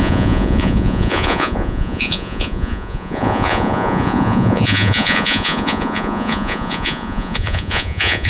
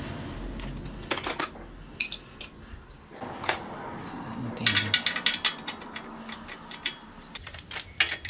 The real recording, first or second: second